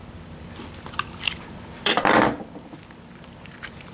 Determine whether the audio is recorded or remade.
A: remade